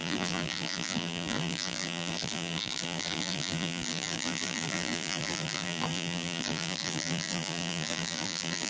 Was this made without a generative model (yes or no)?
no